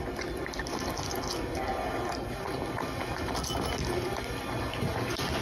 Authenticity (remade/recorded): recorded